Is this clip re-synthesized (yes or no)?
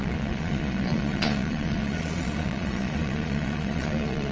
yes